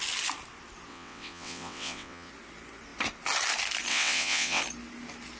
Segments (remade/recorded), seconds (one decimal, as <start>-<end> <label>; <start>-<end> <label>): 0.0-0.9 recorded; 0.9-2.3 remade; 2.3-3.9 recorded; 3.9-4.6 remade; 4.6-5.4 recorded